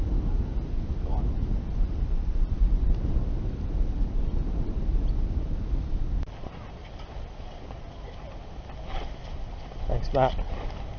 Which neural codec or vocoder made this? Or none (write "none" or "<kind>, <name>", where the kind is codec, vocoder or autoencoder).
none